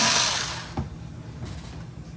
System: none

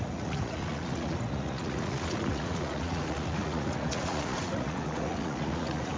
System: vocoder, Vocos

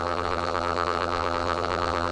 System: vocoder, BigVGAN v2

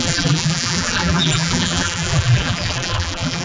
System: vocoder, BigVGAN v2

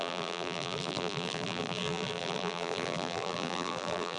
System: vocoder, BigVGAN v2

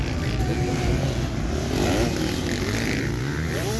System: none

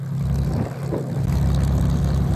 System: none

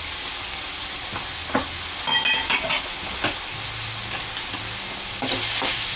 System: none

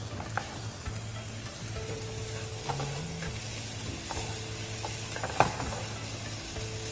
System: none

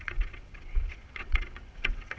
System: vocoder, WaveNeXt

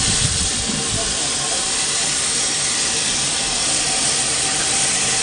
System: vocoder, BigVGAN v2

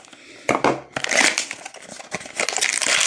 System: none